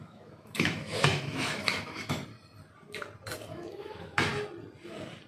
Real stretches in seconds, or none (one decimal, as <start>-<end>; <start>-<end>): 2.2-3.5; 4.3-5.3